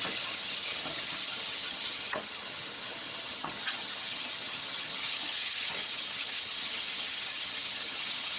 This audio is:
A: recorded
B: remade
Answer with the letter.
B